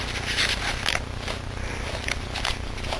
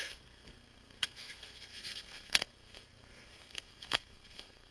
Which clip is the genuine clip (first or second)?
first